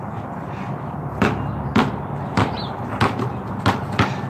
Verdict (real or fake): real